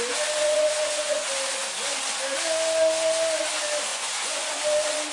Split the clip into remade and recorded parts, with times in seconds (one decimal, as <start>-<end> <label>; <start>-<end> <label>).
0.0-0.4 recorded; 0.4-1.3 remade; 1.3-3.9 recorded; 3.9-4.6 remade; 4.6-5.1 recorded